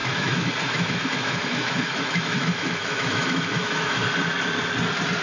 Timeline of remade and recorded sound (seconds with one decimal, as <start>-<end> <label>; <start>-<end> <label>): 0.0-4.0 remade; 4.0-5.2 recorded